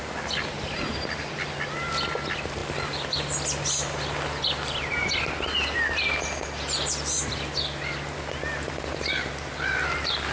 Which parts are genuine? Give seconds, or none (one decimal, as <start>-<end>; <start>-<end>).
0.0-10.3